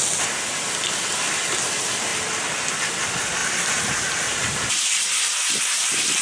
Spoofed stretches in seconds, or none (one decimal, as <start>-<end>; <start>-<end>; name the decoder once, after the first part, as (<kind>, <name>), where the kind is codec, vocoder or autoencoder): 3.4-5.6 (vocoder, BigVGAN v2)